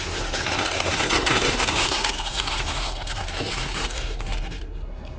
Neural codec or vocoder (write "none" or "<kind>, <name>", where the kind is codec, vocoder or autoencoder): codec, SNAC